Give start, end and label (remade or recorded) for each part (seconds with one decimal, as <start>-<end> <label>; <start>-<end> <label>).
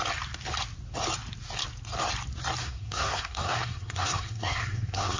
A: 0.0-2.6 recorded; 2.6-5.2 remade